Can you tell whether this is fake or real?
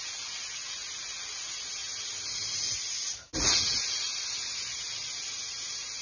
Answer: real